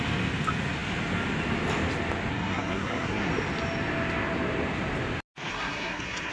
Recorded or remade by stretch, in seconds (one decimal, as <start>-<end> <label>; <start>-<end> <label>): 0.0-2.3 recorded; 2.3-3.3 remade; 3.3-5.5 recorded; 5.5-6.3 remade